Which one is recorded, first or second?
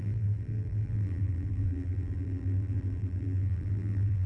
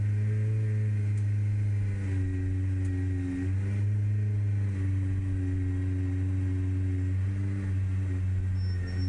second